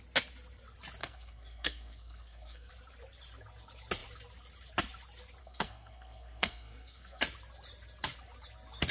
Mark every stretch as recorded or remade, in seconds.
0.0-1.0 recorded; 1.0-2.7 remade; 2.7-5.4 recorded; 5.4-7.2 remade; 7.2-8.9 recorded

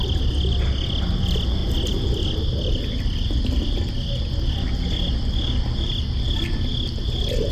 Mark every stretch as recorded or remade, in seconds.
0.0-7.5 recorded

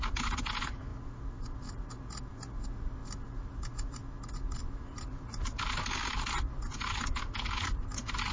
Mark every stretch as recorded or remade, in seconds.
0.0-3.0 recorded; 3.0-4.0 remade; 4.0-4.6 recorded; 4.6-8.3 remade

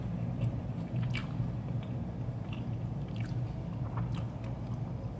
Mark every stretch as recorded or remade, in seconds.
0.0-1.2 recorded; 1.2-3.4 remade; 3.4-5.2 recorded

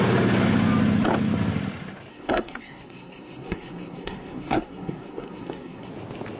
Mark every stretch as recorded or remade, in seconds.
0.0-2.1 recorded; 2.1-5.9 remade; 5.9-6.4 recorded

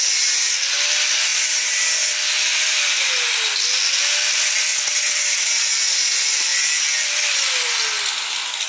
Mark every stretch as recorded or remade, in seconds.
0.0-8.7 recorded

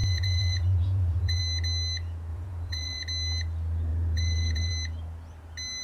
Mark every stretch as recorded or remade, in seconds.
0.0-1.4 remade; 1.4-2.3 recorded; 2.3-3.0 remade; 3.0-3.9 recorded; 3.9-4.7 remade; 4.7-5.8 recorded

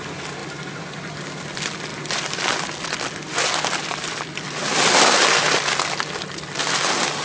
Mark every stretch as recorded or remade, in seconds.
0.0-7.2 recorded